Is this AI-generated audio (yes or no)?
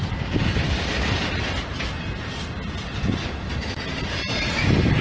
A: no